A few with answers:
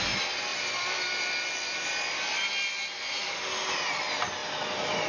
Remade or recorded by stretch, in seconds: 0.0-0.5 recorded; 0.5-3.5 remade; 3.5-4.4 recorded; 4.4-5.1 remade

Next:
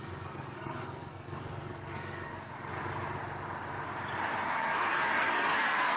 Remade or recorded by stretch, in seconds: 0.0-2.3 remade; 2.3-4.5 recorded; 4.5-6.0 remade

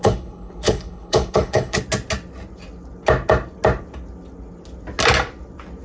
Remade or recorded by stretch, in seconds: 0.0-1.8 remade; 1.8-5.8 recorded

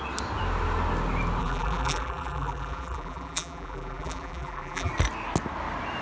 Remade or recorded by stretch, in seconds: 0.0-1.4 recorded; 1.4-4.9 remade; 4.9-6.0 recorded

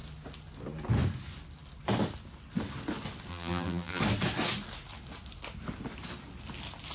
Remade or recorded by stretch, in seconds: 0.0-3.3 recorded; 3.3-4.0 remade; 4.0-6.9 recorded

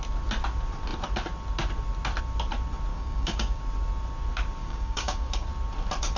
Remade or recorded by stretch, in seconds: 0.0-2.9 recorded; 2.9-3.6 remade; 3.6-4.6 recorded; 4.6-5.5 remade; 5.5-6.2 recorded

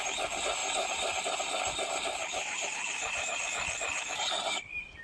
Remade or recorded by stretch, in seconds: 0.0-0.6 recorded; 0.6-1.2 remade; 1.2-2.2 recorded; 2.2-3.3 remade; 3.3-5.0 recorded